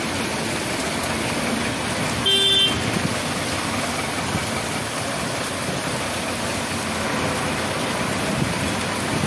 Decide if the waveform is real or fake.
real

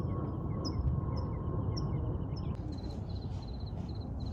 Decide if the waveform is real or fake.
real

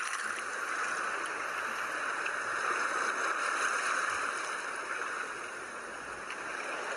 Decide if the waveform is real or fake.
real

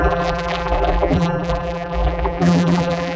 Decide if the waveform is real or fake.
fake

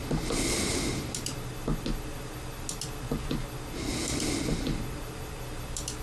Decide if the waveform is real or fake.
real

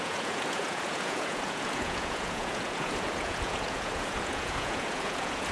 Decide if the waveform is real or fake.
fake